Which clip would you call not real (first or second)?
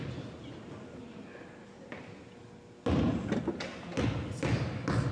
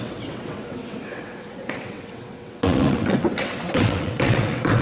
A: second